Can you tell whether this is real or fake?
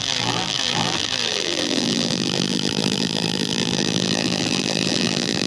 fake